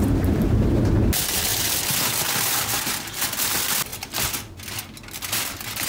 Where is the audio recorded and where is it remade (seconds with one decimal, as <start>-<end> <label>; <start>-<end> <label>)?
0.0-3.9 recorded; 3.9-4.6 remade; 4.6-5.9 recorded